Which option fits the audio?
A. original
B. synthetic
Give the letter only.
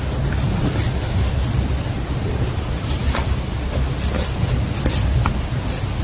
A